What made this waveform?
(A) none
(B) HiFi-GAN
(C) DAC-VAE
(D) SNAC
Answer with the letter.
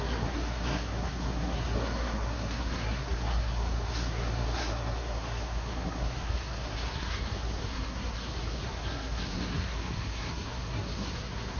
D